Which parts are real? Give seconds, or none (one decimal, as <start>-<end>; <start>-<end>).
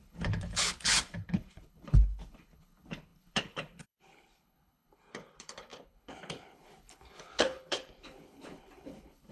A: none